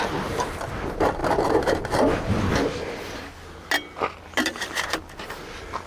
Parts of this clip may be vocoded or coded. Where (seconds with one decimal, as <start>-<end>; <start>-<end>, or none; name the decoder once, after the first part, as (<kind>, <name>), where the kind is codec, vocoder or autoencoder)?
none